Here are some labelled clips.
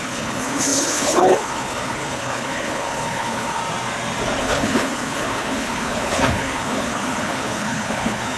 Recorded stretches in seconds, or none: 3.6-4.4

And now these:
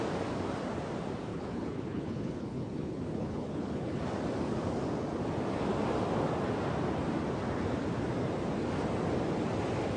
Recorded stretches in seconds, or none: 0.0-1.3; 4.0-10.0